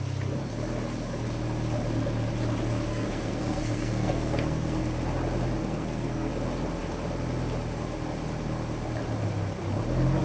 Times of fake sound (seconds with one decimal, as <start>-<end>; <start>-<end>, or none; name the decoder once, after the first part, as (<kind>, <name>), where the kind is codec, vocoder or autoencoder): 2.9-4.8 (codec, SNAC); 5.6-6.3